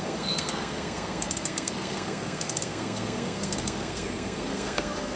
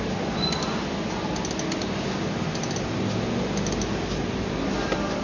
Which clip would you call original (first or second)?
second